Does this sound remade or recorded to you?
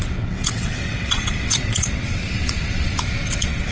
remade